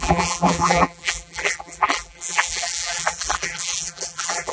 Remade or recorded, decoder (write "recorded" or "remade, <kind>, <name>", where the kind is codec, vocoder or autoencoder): remade, vocoder, BigVGAN v2